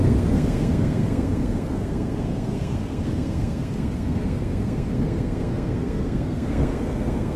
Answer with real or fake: fake